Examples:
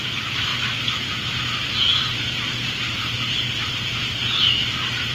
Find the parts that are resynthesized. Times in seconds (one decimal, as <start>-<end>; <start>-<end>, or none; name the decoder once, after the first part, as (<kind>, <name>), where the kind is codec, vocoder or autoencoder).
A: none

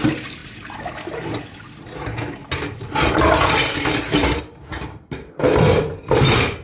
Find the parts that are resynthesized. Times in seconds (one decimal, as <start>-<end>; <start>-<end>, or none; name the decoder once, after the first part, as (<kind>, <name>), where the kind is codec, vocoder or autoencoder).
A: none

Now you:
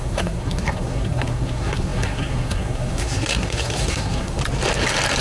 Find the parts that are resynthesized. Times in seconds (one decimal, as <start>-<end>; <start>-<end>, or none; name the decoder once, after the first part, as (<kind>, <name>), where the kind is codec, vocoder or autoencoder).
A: 0.0-4.4 (codec, SNAC)

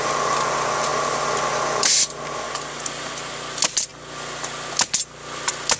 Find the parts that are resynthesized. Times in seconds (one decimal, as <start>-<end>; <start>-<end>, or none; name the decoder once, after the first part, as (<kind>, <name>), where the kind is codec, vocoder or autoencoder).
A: none